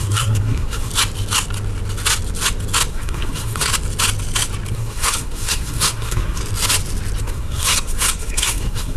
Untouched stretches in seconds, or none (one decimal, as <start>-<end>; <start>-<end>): 0.9-2.9; 3.7-4.7; 6.4-7.2